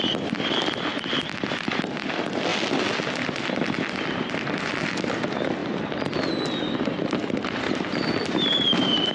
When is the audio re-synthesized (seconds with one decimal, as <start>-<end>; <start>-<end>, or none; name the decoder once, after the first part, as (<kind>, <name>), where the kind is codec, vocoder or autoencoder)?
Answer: 0.0-9.1 (vocoder, BigVGAN v2)